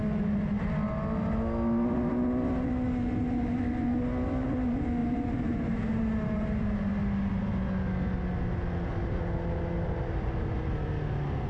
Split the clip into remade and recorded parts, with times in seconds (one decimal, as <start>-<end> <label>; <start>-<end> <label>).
0.0-5.0 recorded; 5.0-6.9 remade; 6.9-11.5 recorded